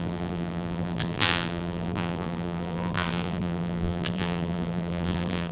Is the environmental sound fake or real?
fake